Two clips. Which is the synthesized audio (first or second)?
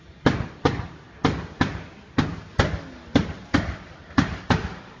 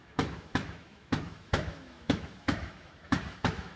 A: second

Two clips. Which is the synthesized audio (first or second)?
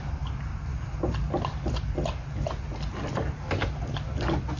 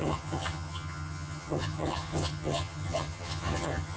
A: second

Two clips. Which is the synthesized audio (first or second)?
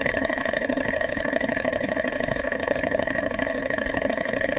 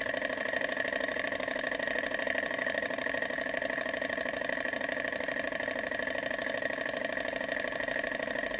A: first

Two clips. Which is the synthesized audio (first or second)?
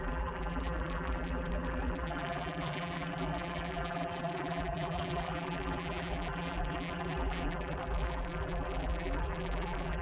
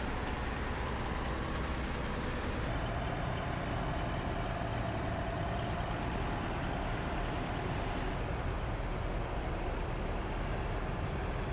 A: first